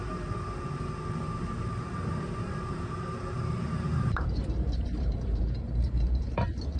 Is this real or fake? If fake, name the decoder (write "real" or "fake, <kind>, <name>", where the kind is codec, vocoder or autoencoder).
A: fake, vocoder, BigVGAN v2